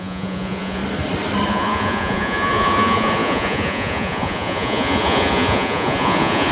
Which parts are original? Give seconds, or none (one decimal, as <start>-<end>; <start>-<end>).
0.8-1.5